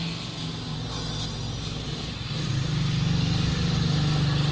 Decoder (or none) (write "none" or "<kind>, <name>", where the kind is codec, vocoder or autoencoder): none